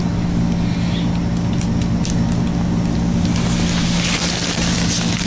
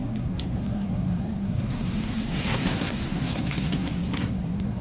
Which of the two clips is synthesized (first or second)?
second